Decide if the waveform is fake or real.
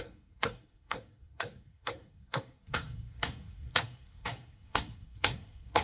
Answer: fake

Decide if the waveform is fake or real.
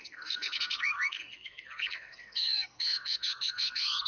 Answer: fake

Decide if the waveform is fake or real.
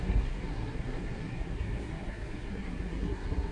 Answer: fake